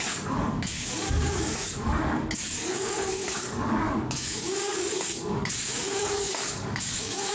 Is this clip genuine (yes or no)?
no